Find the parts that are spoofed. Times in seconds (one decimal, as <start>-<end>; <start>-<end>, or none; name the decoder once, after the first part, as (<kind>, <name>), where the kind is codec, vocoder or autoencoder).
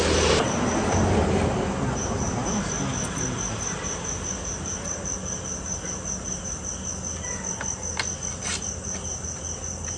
none